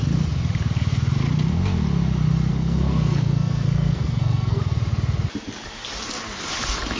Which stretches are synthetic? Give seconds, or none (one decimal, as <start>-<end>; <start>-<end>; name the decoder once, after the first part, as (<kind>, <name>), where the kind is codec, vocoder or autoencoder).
2.5-4.6 (codec, SNAC)